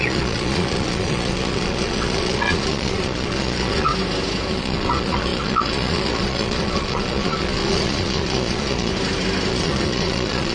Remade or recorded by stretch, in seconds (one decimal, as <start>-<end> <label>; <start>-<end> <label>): 0.0-3.9 remade; 3.9-4.5 recorded; 4.5-8.9 remade; 8.9-9.5 recorded; 9.5-10.5 remade